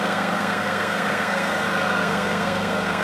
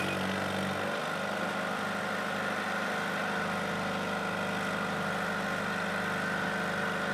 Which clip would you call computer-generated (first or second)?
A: first